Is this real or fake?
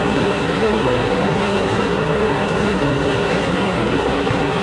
fake